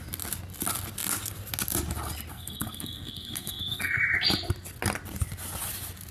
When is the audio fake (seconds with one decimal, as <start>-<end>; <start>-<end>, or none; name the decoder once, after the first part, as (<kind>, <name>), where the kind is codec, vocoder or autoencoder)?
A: 2.3-4.0 (codec, SNAC)